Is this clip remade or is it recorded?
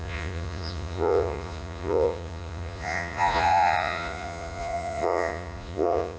remade